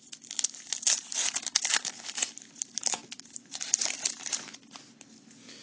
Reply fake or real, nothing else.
real